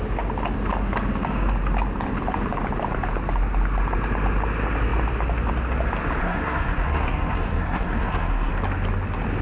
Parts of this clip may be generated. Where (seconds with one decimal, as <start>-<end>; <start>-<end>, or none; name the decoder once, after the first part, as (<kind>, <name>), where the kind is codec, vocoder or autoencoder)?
6.2-8.5 (codec, SNAC)